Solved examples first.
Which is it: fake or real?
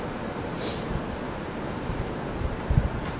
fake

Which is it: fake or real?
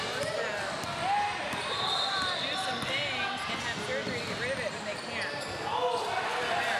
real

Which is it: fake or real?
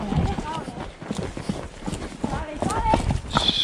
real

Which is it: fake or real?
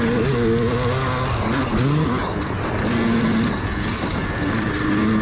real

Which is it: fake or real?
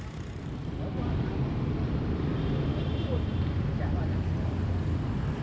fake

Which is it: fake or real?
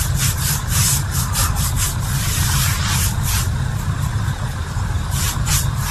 fake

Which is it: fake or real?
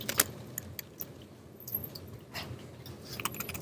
real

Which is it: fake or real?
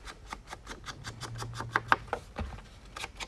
real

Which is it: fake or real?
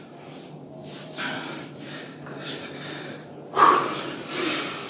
fake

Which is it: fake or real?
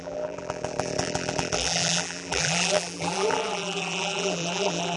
fake